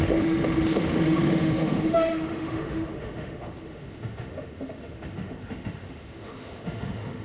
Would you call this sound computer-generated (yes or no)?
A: yes